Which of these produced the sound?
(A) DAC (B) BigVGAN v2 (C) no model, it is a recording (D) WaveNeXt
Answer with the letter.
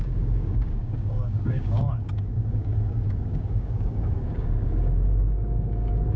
A